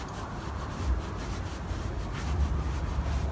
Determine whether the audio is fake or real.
real